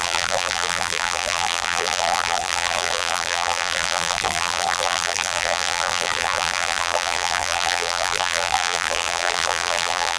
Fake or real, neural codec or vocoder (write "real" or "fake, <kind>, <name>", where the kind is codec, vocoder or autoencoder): fake, vocoder, BigVGAN v2